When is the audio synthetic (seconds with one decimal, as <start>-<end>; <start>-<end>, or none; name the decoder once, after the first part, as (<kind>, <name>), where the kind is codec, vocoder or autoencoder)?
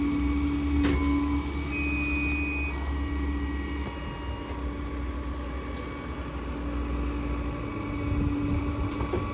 none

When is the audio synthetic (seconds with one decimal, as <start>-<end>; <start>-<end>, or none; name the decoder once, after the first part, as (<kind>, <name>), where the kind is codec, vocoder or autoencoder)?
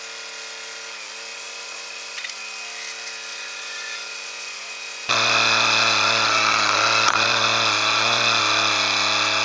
1.3-2.4 (vocoder, Vocos); 3.3-8.4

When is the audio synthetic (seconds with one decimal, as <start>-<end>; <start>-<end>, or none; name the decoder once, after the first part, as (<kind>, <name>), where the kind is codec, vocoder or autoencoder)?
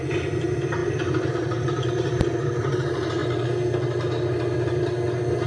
0.0-3.2 (vocoder, BigVGAN v2)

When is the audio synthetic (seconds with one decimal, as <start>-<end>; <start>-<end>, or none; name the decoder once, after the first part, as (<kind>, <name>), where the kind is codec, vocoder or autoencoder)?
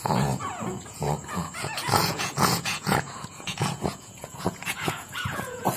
0.0-5.8 (vocoder, Vocos)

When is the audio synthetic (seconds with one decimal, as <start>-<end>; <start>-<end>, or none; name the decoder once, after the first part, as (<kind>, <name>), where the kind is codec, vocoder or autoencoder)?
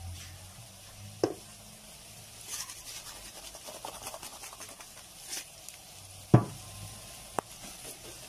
none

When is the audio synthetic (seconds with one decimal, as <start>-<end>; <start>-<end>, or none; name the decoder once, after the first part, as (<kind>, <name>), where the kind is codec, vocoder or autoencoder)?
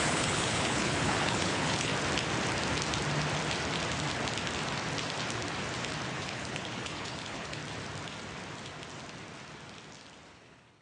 0.0-1.9 (codec, HILCodec); 6.1-7.6; 10.3-10.8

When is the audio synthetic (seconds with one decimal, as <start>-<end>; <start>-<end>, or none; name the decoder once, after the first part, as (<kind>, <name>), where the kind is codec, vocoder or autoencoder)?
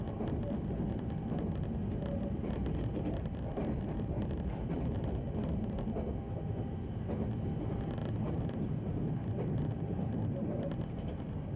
2.6-4.3 (vocoder, BigVGAN v2); 8.0-10.5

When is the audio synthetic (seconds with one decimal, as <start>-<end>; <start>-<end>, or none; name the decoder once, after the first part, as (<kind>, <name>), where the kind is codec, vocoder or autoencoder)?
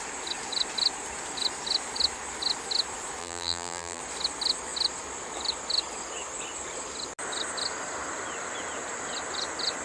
3.2-4.0 (vocoder, BigVGAN v2)